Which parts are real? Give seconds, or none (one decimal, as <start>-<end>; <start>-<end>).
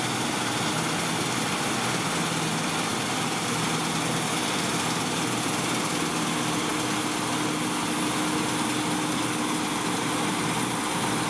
0.0-11.3